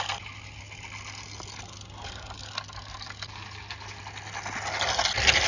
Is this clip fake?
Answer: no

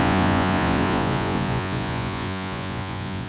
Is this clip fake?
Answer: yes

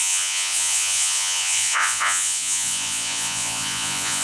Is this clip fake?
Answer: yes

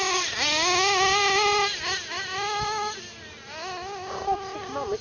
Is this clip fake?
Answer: no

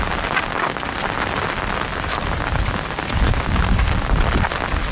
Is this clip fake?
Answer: no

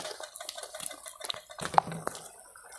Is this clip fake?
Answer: no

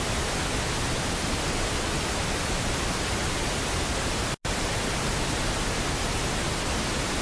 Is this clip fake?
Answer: no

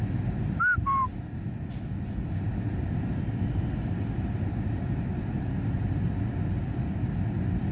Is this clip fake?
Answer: no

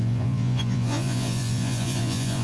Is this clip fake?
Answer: yes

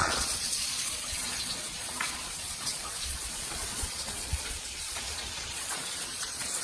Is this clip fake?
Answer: yes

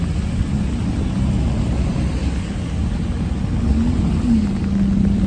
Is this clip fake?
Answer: no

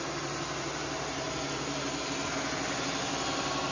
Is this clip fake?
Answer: no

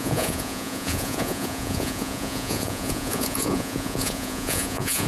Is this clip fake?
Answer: yes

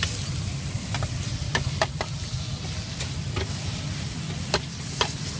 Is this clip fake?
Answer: no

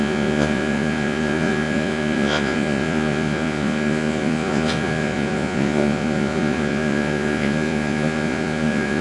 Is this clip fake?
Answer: yes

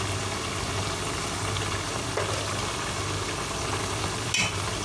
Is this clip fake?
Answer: no